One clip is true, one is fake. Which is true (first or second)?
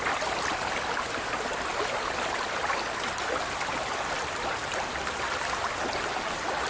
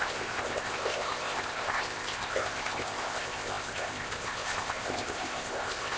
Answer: first